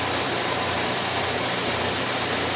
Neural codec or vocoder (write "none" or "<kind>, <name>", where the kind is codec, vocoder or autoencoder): vocoder, BigVGAN v2